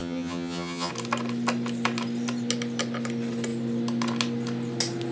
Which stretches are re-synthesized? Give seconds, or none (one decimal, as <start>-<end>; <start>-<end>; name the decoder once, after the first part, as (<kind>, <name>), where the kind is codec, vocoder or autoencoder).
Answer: 0.0-0.9 (vocoder, HiFi-GAN)